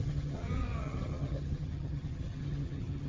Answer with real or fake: fake